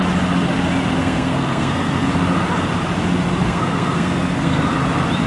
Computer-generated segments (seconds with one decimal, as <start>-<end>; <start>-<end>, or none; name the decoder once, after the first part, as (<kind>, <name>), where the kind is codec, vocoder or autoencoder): 1.0-2.1 (codec, SNAC); 3.4-4.6